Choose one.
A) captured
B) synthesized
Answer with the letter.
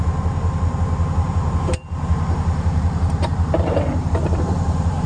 B